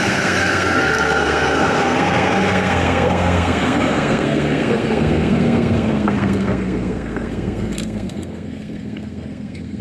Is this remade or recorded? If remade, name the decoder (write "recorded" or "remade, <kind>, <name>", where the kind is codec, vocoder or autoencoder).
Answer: remade, codec, SNAC